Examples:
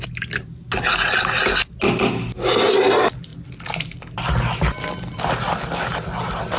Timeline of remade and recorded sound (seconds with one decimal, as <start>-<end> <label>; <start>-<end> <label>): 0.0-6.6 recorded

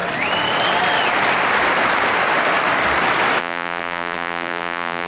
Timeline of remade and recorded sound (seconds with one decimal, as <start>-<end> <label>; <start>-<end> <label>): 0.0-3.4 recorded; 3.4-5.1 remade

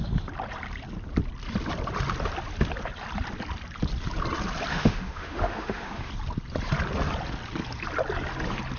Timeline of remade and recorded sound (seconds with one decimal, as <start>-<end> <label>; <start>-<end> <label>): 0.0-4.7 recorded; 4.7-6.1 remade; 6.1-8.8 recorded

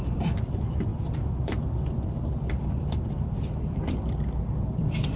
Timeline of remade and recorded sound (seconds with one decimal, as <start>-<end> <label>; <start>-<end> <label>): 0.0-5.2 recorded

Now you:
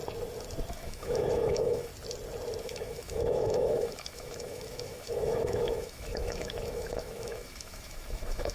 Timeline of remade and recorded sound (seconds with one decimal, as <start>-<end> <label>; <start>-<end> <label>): 0.0-0.7 recorded; 0.7-1.9 remade; 1.9-2.6 recorded; 2.6-8.5 remade